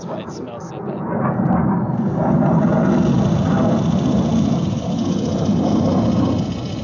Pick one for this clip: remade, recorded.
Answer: recorded